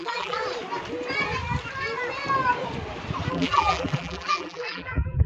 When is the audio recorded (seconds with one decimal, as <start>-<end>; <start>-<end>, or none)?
0.4-3.3